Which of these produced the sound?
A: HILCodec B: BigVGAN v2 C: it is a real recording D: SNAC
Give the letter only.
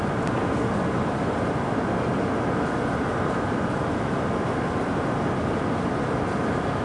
C